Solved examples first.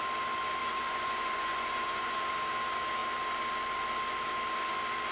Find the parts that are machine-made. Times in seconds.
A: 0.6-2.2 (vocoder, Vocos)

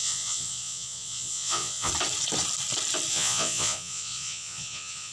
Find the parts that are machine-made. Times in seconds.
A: 0.0-1.9 (vocoder, Vocos); 3.1-5.1

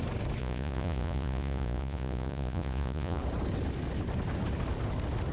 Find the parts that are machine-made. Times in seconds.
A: 0.4-3.2 (vocoder, Vocos)

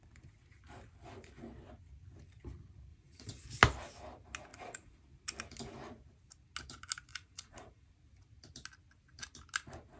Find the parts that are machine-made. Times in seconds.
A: 2.9-3.4 (vocoder, Vocos); 4.5-5.0; 7.1-7.9

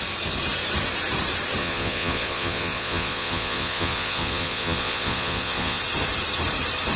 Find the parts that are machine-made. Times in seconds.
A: 1.6-5.8 (vocoder, Vocos)